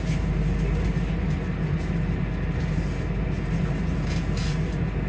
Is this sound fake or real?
real